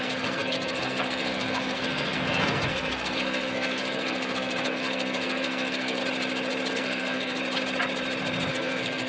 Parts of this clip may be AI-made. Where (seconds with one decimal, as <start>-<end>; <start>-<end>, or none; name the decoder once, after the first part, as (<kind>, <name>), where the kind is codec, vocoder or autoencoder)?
0.0-6.0 (codec, SNAC); 6.7-7.4; 8.5-9.1